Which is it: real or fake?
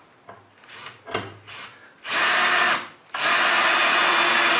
real